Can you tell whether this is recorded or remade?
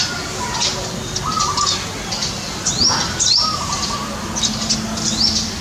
recorded